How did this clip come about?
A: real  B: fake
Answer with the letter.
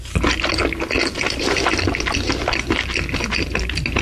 A